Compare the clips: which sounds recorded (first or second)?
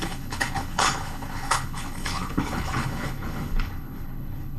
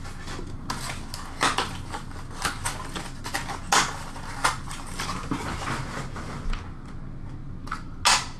second